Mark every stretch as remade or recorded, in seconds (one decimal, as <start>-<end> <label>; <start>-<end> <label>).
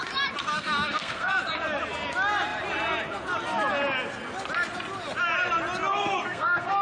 0.0-0.4 recorded; 0.4-1.3 remade; 1.3-5.9 recorded; 5.9-6.8 remade